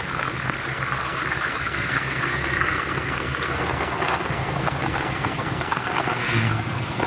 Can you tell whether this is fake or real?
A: fake